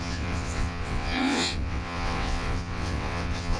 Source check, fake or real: fake